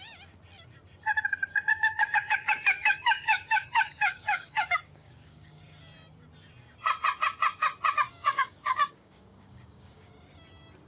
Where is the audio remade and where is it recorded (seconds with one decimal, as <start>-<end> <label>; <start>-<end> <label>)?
0.0-1.7 recorded; 1.7-5.6 remade; 5.6-8.1 recorded; 8.1-10.1 remade; 10.1-10.9 recorded

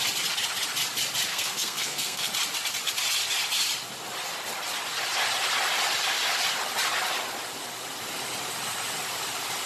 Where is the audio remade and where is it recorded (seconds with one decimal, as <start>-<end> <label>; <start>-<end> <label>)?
0.0-1.3 recorded; 1.3-2.3 remade; 2.3-9.7 recorded

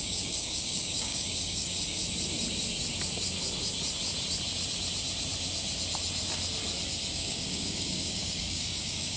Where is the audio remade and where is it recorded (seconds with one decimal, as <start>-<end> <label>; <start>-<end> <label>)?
0.0-2.0 remade; 2.0-7.1 recorded; 7.1-9.2 remade

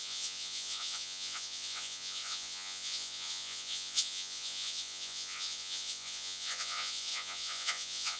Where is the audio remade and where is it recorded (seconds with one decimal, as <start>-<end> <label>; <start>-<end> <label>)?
0.0-8.2 remade

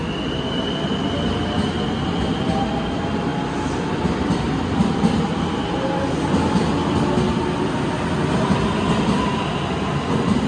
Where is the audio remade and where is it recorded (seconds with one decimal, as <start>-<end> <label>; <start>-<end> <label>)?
0.0-10.5 recorded